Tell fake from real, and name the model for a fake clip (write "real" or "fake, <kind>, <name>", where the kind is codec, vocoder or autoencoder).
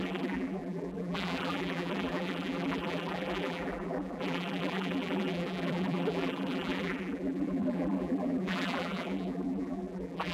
fake, vocoder, BigVGAN v2